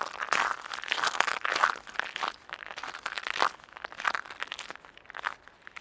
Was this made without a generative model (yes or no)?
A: yes